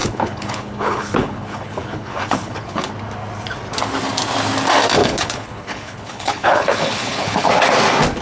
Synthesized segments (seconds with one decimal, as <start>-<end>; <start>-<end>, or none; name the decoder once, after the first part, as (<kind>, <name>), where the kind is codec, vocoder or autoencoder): 0.0-2.9 (codec, HILCodec); 5.0-7.5